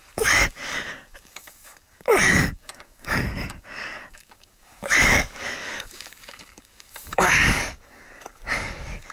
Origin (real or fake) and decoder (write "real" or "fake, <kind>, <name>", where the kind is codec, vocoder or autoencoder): fake, codec, DAC